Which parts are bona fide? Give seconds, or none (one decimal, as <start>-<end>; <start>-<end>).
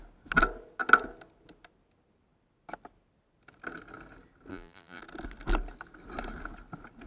0.0-4.5; 5.0-7.1